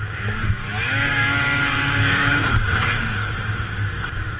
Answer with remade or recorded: remade